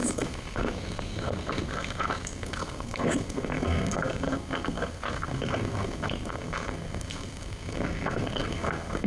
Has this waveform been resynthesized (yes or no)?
yes